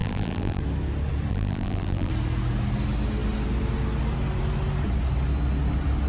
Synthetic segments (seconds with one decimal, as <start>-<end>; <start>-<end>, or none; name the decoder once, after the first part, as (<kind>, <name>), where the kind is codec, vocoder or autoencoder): 0.0-0.6 (vocoder, BigVGAN v2); 1.3-2.1